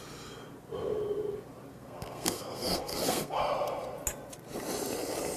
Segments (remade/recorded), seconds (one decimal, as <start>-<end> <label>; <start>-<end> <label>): 0.0-1.7 recorded; 1.7-3.4 remade; 3.4-5.4 recorded